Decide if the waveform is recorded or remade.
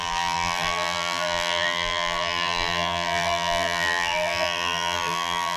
remade